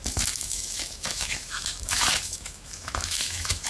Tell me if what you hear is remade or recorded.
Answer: remade